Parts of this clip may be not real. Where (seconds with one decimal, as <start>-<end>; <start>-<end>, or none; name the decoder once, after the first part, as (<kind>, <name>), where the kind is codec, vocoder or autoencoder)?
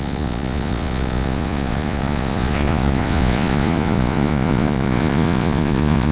0.0-6.1 (vocoder, Vocos)